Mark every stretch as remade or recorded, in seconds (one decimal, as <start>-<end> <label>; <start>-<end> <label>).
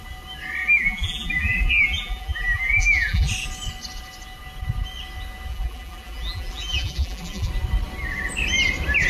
0.0-0.6 recorded; 0.6-3.3 remade; 3.3-5.5 recorded; 5.5-7.5 remade; 7.5-9.1 recorded